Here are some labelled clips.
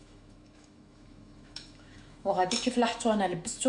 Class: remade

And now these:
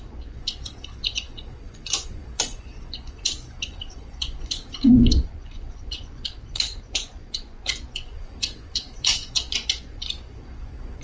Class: remade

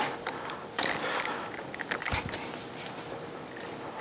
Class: remade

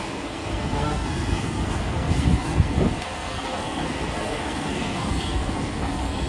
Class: remade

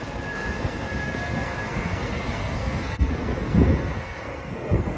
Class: remade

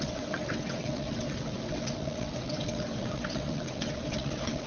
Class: remade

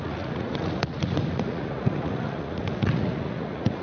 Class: remade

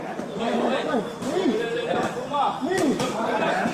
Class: remade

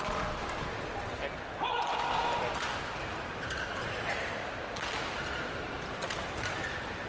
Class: recorded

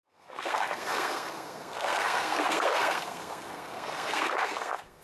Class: remade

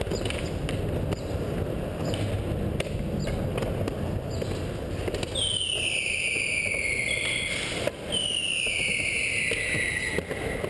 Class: recorded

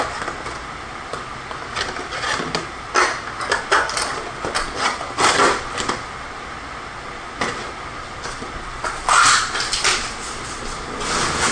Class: recorded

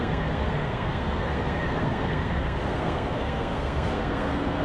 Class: remade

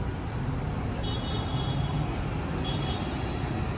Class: recorded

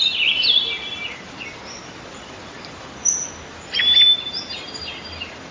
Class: recorded